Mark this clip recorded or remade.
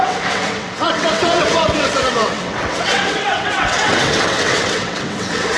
remade